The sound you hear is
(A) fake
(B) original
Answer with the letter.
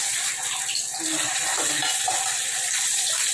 B